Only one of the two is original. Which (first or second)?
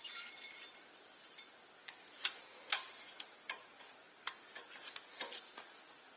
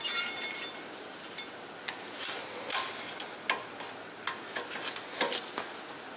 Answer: second